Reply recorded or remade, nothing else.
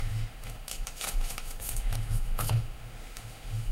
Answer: remade